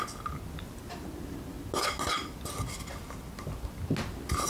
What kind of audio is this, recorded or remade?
recorded